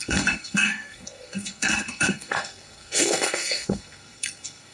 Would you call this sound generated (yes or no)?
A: yes